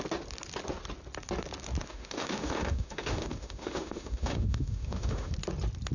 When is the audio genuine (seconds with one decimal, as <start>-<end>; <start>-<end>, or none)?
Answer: 0.0-1.8; 5.3-5.9